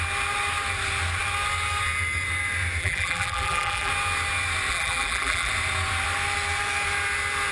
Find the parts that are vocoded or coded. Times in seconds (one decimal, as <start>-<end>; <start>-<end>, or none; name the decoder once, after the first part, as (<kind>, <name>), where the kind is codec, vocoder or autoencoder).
2.8-3.9 (vocoder, BigVGAN v2); 4.7-5.5